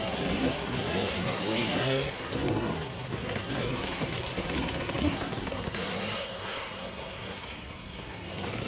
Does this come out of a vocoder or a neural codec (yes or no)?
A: yes